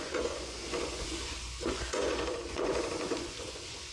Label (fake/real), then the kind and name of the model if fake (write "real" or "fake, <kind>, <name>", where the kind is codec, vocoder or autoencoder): fake, vocoder, Vocos